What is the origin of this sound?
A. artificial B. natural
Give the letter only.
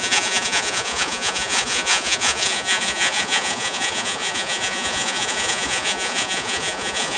A